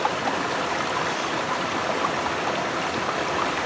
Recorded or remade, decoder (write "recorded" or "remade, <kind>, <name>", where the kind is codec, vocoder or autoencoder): recorded